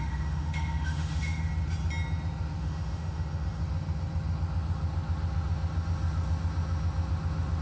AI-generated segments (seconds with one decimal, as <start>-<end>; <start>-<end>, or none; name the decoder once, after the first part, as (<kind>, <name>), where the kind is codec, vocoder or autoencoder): 0.0-1.5 (autoencoder, DAC-VAE); 2.6-3.6